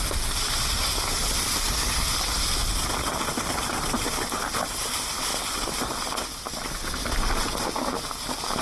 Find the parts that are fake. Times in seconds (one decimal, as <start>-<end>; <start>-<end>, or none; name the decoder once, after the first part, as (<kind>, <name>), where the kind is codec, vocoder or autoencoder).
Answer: none